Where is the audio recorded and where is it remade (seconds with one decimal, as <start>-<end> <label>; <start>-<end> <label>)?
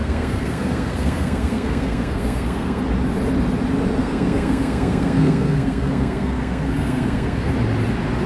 0.0-2.8 remade; 2.8-4.0 recorded; 4.0-7.5 remade; 7.5-8.3 recorded